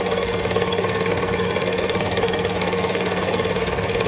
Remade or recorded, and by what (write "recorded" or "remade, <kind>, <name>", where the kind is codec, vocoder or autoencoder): remade, codec, SNAC